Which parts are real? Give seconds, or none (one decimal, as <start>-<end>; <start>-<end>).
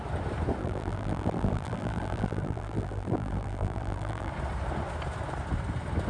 0.0-0.6; 4.3-6.1